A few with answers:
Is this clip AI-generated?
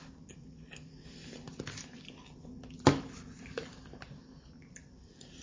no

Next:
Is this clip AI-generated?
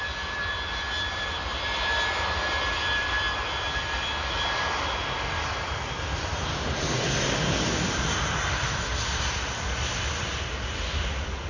yes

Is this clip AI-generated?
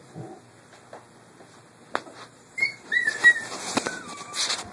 no